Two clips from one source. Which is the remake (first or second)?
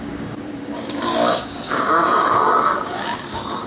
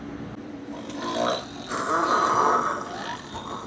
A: first